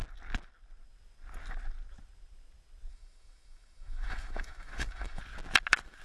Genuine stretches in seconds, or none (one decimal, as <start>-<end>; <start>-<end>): 0.0-2.9; 5.2-6.0